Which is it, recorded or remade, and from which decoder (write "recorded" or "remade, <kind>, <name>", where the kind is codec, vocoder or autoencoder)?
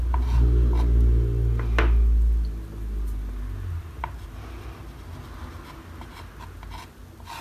recorded